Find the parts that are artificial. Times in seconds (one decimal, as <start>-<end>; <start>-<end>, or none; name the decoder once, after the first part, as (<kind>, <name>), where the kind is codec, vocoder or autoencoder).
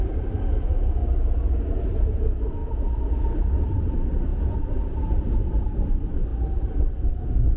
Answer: 0.0-1.0 (vocoder, BigVGAN v2); 1.9-2.6; 3.1-6.3; 7.1-7.6